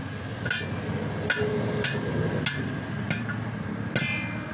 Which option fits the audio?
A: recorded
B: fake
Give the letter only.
A